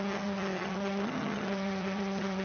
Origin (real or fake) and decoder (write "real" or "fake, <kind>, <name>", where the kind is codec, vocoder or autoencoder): fake, vocoder, HiFi-GAN